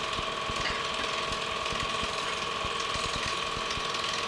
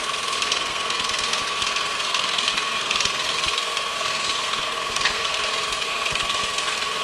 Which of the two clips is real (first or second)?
first